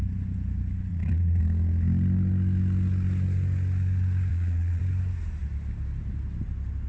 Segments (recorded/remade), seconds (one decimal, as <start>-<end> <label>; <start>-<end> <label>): 0.0-0.9 recorded; 0.9-1.4 remade; 1.4-4.3 recorded; 4.3-4.8 remade; 4.8-6.9 recorded